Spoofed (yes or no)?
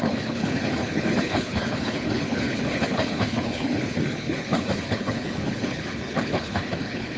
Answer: yes